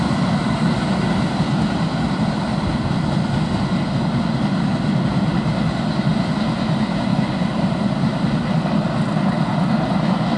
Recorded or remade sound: recorded